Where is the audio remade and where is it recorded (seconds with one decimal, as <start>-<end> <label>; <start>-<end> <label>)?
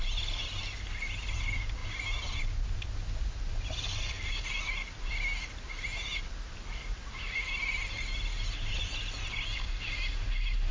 0.0-10.7 recorded